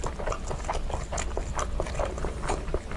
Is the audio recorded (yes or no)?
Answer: yes